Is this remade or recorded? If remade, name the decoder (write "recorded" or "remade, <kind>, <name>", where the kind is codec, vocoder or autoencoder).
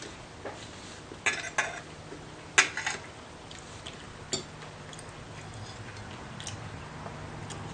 recorded